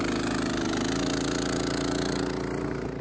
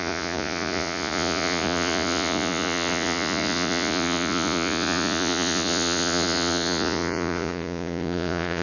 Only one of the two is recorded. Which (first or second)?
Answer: first